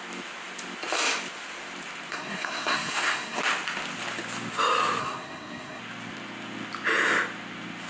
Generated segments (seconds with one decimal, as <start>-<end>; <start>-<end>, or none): 2.1-3.4; 5.0-5.8